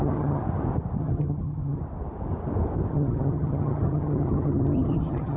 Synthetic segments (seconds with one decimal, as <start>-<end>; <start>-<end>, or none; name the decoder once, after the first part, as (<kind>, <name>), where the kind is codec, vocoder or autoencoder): 0.0-0.4 (vocoder, HiFi-GAN); 1.0-1.8; 2.9-5.4